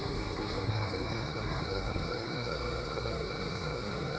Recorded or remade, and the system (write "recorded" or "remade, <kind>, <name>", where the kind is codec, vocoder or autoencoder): remade, codec, SNAC